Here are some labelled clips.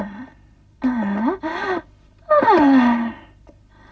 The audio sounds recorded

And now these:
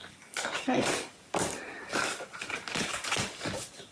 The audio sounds remade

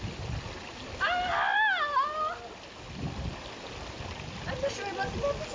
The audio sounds recorded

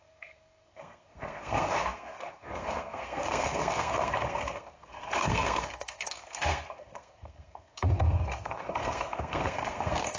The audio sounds remade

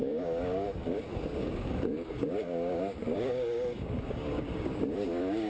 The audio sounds remade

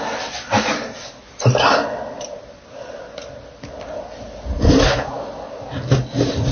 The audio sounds recorded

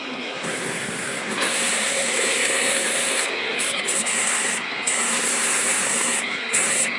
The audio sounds remade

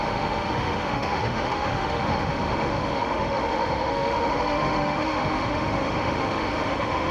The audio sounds remade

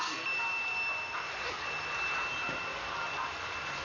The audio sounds remade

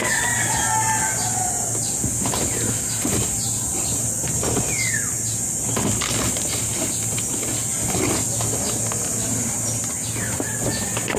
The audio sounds recorded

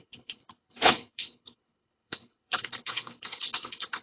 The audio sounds remade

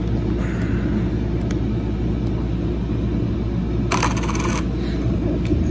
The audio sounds recorded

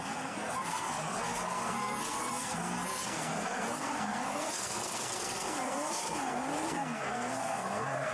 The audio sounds remade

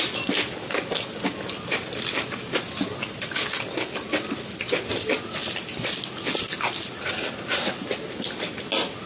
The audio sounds recorded